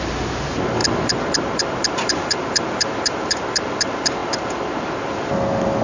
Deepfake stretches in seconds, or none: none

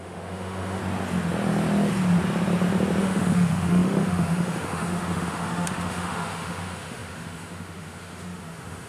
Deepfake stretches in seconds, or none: 0.0-0.8 (autoencoder, DAC-VAE); 3.0-8.9

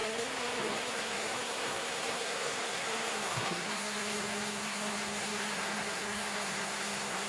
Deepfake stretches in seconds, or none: 0.0-7.3 (codec, SNAC)

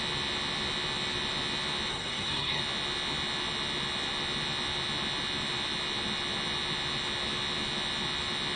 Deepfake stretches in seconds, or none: 1.9-2.6 (codec, SNAC)